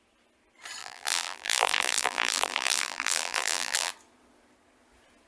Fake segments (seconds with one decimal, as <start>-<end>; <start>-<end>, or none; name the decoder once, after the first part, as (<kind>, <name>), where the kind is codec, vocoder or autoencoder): 0.8-3.9 (vocoder, BigVGAN v2)